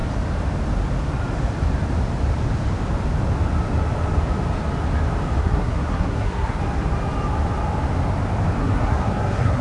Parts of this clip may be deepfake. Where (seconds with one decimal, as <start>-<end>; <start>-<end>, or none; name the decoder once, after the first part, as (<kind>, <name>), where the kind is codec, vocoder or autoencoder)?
5.4-6.6 (codec, SNAC); 8.6-9.6